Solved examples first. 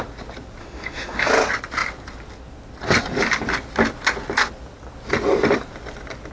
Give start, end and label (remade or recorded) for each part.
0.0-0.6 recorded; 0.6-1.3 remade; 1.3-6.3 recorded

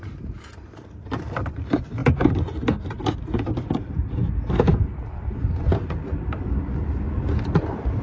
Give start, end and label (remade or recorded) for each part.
0.0-2.0 remade; 2.0-2.9 recorded; 2.9-4.0 remade; 4.0-5.5 recorded; 5.5-8.0 remade

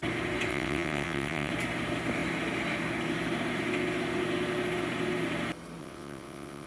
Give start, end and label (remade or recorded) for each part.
0.0-0.5 recorded; 0.5-1.5 remade; 1.5-5.8 recorded; 5.8-6.7 remade

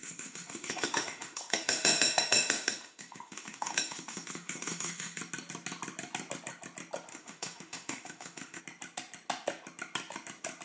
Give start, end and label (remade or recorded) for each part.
0.0-5.2 remade; 5.2-7.1 recorded; 7.1-8.6 remade; 8.6-10.6 recorded

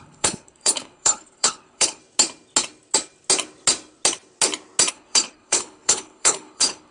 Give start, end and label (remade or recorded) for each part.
0.0-2.0 remade; 2.0-4.9 recorded; 4.9-6.9 remade

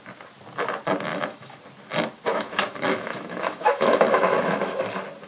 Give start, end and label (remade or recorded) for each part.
0.0-1.1 recorded; 1.1-1.6 remade; 1.6-2.3 recorded; 2.3-4.8 remade; 4.8-5.3 recorded

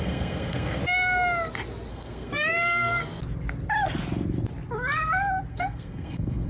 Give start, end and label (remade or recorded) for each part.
0.0-0.8 remade; 0.8-1.9 recorded; 1.9-2.5 remade; 2.5-5.5 recorded; 5.5-6.5 remade

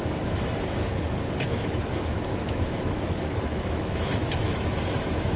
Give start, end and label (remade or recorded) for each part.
0.0-5.4 remade